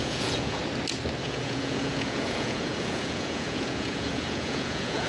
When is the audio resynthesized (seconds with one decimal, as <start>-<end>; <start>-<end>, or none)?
0.0-0.6; 1.2-5.1